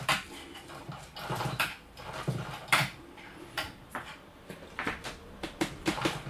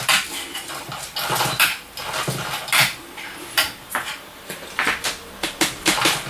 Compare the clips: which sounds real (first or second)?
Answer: second